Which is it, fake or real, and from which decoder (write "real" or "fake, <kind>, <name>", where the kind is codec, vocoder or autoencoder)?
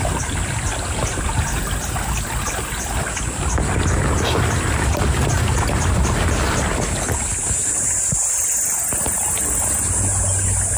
real